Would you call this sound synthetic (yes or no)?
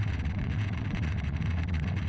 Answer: yes